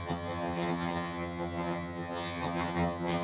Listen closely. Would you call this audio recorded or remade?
remade